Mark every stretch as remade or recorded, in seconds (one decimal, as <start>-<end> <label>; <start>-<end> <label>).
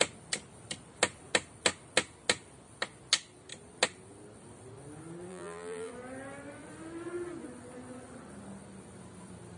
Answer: 0.0-5.3 recorded; 5.3-5.9 remade; 5.9-9.6 recorded